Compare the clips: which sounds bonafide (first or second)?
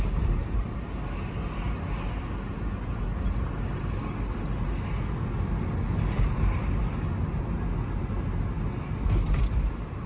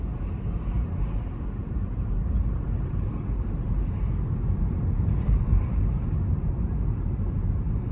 first